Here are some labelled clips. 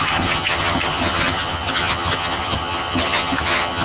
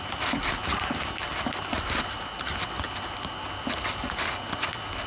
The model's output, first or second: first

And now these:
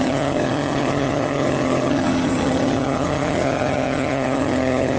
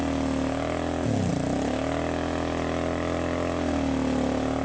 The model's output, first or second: first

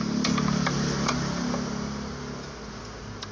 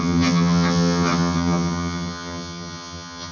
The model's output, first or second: second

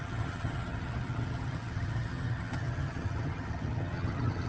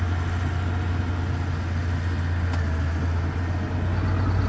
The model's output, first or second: first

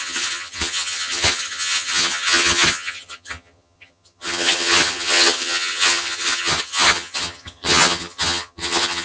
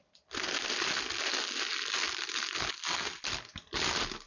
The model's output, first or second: first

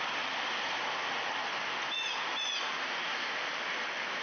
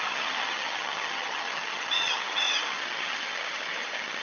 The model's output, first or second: second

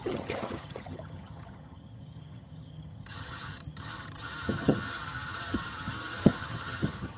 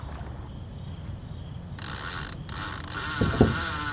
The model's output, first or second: first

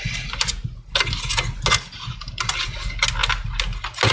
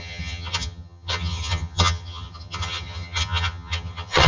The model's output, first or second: second